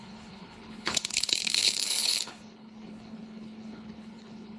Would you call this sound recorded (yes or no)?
no